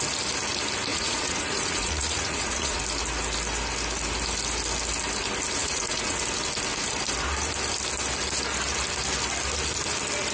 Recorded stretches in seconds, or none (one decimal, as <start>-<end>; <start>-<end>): 0.0-0.9; 2.8-5.6; 6.2-10.3